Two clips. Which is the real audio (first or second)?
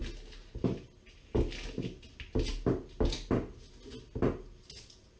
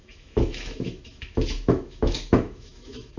first